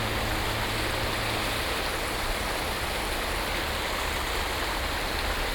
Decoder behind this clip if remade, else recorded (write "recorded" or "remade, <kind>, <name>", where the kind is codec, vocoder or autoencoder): recorded